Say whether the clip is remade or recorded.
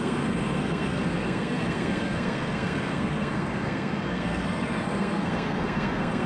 remade